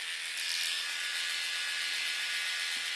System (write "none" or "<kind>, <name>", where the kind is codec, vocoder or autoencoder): none